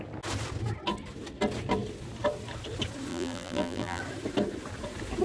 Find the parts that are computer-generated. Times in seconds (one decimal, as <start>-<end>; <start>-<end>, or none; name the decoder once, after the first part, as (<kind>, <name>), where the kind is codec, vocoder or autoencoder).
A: 3.1-4.0 (vocoder, BigVGAN v2)